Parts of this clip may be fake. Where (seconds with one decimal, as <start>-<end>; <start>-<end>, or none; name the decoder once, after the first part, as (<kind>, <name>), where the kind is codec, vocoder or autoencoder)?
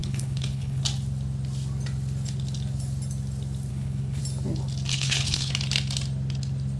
0.0-0.8 (codec, HILCodec); 3.7-4.2; 4.9-5.5